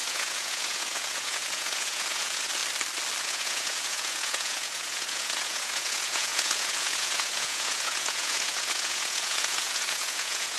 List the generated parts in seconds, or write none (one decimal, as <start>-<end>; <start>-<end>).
0.0-2.6; 3.2-10.6